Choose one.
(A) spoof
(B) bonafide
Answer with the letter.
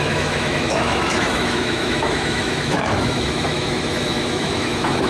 A